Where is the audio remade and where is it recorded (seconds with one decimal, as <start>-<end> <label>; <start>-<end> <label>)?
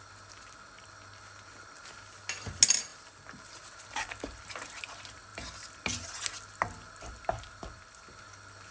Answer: 0.0-8.7 recorded